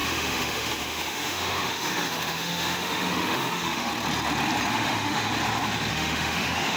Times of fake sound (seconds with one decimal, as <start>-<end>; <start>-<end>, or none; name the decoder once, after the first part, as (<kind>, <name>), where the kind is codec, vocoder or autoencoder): 0.0-3.9 (autoencoder, DAC-VAE); 4.7-5.3; 5.9-6.8